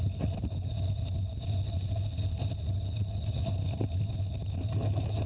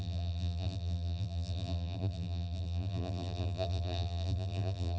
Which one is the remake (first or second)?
second